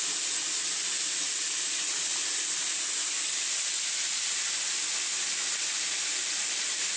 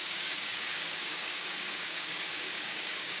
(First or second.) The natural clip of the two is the first